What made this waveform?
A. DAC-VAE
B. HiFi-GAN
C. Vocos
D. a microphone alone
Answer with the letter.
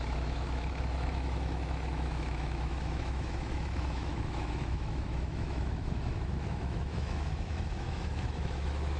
A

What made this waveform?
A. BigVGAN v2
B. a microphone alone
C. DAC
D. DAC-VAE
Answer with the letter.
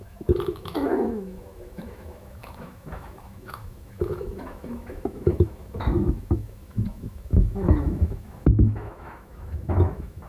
D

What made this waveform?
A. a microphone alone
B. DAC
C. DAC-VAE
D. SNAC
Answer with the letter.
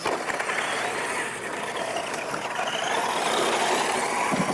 A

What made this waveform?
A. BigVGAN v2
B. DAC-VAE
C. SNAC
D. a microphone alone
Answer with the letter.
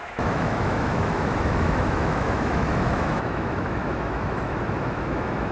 B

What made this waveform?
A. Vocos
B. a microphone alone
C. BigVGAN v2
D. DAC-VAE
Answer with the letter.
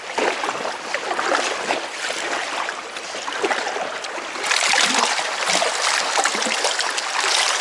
B